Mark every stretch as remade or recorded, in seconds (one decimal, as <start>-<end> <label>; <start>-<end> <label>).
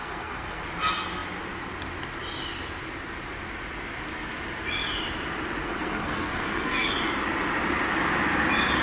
0.0-0.6 remade; 0.6-5.6 recorded; 5.6-6.9 remade; 6.9-8.8 recorded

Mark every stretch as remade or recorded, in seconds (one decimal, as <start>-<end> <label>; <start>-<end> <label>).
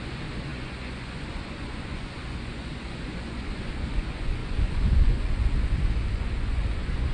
0.0-7.1 remade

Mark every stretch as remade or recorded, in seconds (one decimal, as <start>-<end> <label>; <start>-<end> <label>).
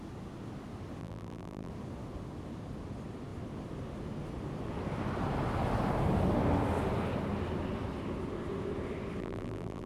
0.0-1.0 recorded; 1.0-1.7 remade; 1.7-9.2 recorded; 9.2-9.9 remade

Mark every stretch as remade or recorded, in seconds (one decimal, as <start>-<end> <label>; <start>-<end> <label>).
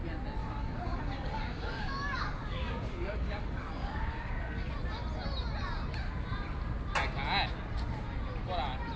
0.0-0.4 recorded; 0.4-4.7 remade; 4.7-9.0 recorded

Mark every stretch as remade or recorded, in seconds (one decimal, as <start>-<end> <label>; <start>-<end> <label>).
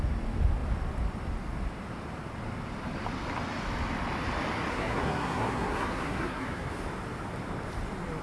0.0-4.7 recorded; 4.7-6.7 remade; 6.7-8.2 recorded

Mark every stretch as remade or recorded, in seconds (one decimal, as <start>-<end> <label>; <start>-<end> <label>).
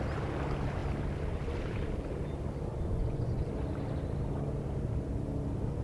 0.0-2.7 recorded; 2.7-3.5 remade; 3.5-5.8 recorded